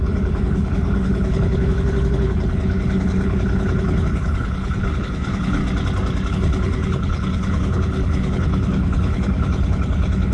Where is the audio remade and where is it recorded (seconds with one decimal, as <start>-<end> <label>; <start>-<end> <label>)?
0.0-5.6 remade; 5.6-6.3 recorded; 6.3-10.3 remade